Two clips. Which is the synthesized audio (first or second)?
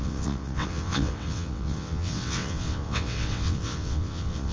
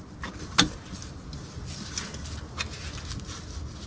first